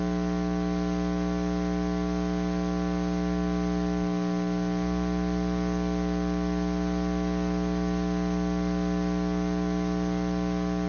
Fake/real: real